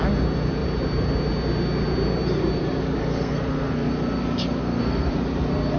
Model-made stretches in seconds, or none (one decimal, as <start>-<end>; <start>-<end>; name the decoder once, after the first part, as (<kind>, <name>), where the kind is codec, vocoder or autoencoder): 3.0-3.9 (codec, SNAC); 4.6-5.1